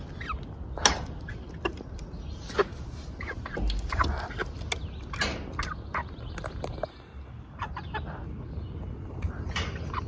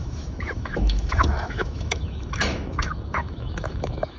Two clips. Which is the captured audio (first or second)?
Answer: first